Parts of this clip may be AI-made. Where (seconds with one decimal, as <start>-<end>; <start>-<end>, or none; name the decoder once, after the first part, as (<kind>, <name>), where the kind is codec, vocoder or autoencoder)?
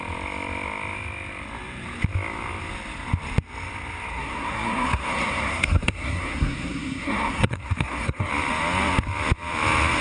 4.1-8.3 (codec, SNAC)